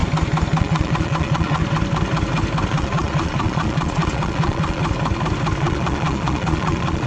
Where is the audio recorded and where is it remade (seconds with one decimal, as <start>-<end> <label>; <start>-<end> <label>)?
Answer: 0.0-0.6 recorded; 0.6-1.6 remade; 1.6-2.7 recorded; 2.7-4.8 remade; 4.8-5.6 recorded; 5.6-7.1 remade